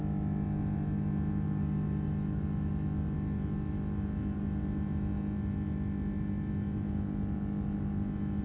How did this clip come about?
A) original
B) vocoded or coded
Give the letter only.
A